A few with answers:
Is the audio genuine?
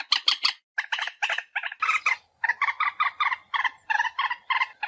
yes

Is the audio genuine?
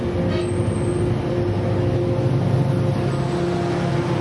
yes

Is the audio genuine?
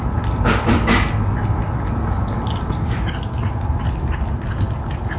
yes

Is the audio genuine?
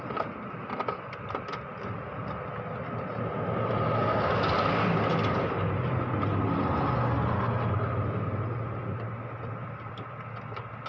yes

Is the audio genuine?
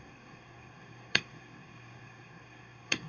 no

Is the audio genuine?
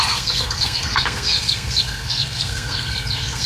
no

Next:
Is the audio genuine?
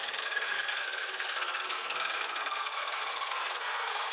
no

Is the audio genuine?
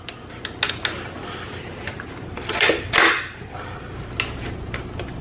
yes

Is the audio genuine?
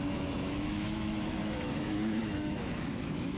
no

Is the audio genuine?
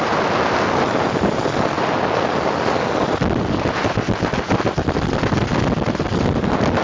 yes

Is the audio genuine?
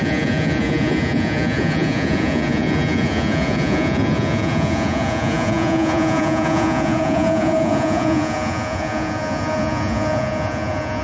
no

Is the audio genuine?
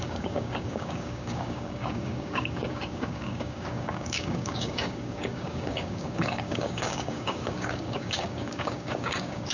no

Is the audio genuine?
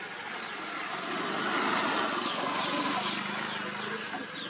yes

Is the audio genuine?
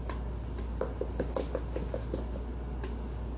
yes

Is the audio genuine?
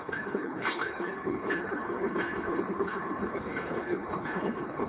no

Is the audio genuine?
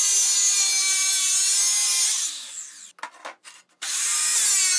yes